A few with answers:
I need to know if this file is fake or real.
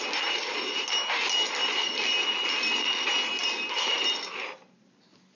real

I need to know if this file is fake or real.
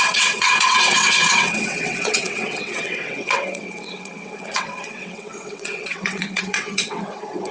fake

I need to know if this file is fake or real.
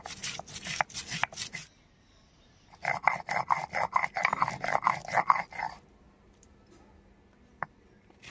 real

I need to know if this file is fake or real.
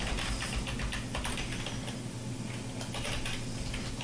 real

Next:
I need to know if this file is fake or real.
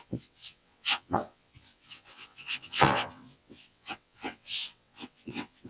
fake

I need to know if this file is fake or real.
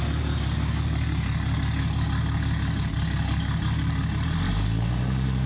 real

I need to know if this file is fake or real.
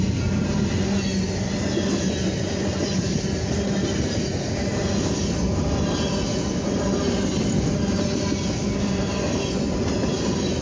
real